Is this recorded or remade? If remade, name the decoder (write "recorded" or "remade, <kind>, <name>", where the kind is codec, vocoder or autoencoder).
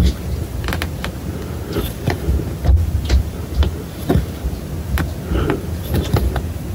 recorded